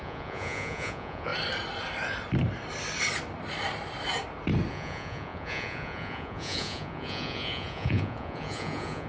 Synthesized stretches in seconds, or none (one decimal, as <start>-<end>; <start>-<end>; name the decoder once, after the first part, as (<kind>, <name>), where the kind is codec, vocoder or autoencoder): 0.0-1.3 (vocoder, Vocos); 4.7-9.1